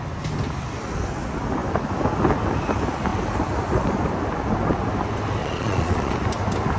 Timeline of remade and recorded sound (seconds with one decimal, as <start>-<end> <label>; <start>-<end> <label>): 0.0-5.4 recorded; 5.4-6.1 remade; 6.1-6.8 recorded